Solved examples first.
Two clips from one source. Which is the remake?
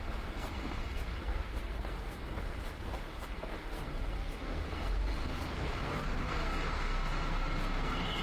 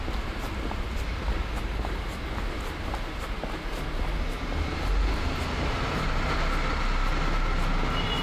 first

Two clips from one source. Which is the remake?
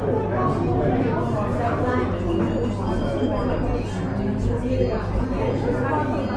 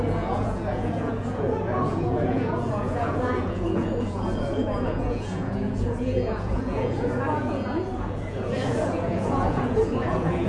second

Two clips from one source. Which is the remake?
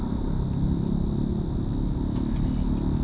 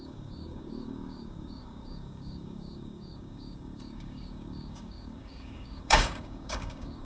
second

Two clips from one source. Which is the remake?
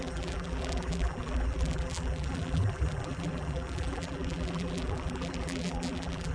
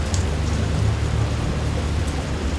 first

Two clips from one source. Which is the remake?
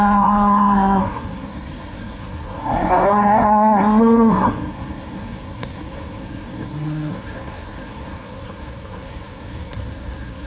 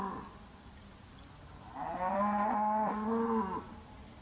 first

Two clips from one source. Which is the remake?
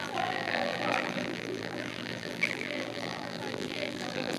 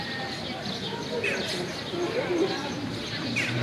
first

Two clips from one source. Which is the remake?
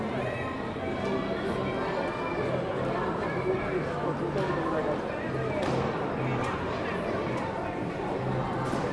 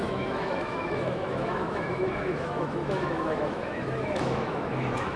second